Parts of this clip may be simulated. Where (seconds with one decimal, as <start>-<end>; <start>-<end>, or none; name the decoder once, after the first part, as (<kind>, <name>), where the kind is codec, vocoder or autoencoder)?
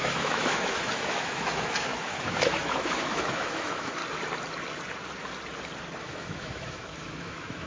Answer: 0.0-4.0 (autoencoder, DAC-VAE); 6.0-7.7